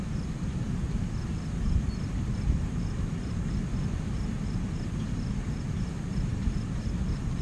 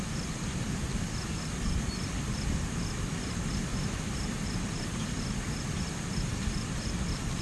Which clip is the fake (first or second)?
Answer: second